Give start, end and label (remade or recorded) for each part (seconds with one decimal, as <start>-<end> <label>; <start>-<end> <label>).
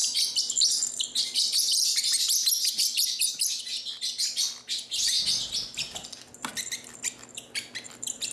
0.0-8.3 recorded